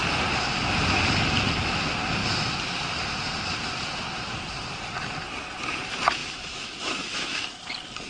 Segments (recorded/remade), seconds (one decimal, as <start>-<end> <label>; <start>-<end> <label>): 0.0-6.2 recorded; 6.2-7.6 remade; 7.6-8.1 recorded